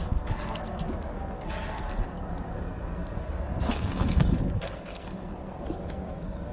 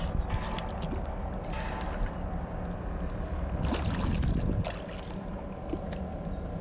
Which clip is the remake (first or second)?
first